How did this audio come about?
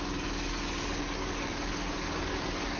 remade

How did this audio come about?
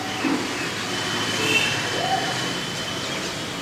recorded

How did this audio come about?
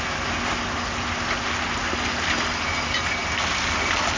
recorded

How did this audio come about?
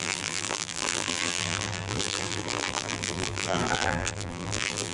remade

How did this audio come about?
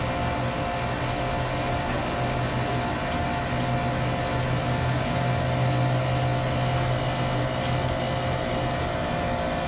recorded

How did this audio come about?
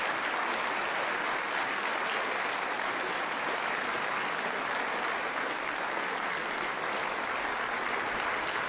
recorded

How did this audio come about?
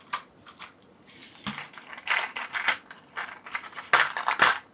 recorded